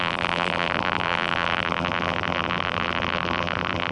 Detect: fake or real fake